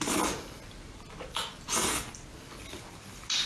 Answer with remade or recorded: recorded